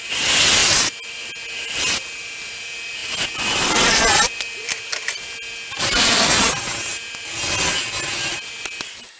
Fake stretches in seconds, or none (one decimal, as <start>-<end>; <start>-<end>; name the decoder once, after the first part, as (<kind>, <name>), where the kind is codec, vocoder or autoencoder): none